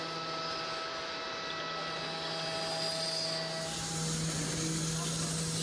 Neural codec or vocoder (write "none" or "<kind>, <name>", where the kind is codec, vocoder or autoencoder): none